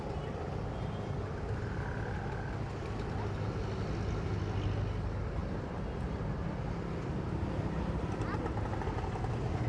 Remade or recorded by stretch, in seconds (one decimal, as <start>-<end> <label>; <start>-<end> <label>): 0.0-9.7 recorded